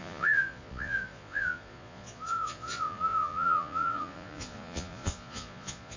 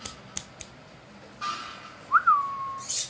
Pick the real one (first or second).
second